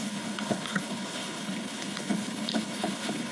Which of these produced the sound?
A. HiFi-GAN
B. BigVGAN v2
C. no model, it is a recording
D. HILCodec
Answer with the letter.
D